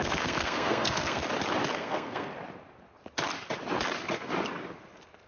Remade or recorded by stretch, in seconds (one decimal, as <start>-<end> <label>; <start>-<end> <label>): 0.0-1.2 remade; 1.2-1.7 recorded; 1.7-2.3 remade; 2.3-5.3 recorded